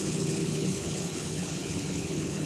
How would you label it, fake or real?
fake